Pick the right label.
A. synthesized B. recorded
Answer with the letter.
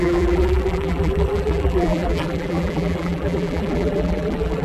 A